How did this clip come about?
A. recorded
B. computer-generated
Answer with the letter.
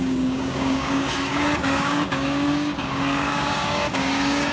B